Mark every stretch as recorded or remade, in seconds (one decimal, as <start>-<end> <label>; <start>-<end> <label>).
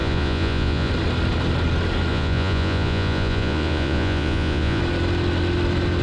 0.0-0.9 remade; 0.9-2.1 recorded; 2.1-4.8 remade; 4.8-6.0 recorded